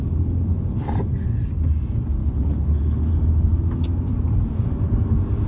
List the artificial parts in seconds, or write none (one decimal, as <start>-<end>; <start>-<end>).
2.2-3.1